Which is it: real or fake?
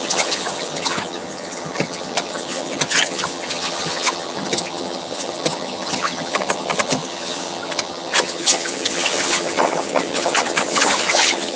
fake